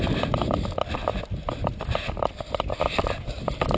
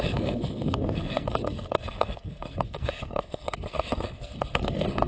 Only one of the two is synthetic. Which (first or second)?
second